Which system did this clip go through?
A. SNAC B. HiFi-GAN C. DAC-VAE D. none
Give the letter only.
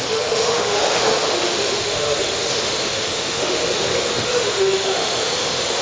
C